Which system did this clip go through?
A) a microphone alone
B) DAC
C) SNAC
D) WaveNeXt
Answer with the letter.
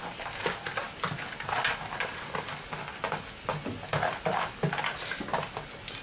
A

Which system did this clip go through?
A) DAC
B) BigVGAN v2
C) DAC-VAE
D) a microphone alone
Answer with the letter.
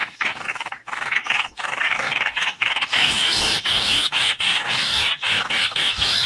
A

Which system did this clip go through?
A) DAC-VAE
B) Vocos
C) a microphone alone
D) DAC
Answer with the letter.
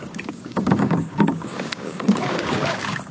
D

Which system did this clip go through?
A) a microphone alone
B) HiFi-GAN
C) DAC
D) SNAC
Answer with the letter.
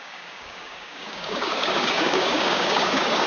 C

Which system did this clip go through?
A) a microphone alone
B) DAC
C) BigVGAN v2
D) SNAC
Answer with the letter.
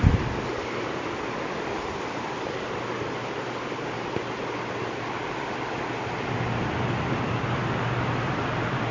A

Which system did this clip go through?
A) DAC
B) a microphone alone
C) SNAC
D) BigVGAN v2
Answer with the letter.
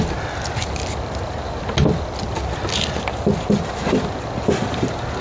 B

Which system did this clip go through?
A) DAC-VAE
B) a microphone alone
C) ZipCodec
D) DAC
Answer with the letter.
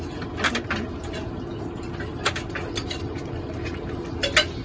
B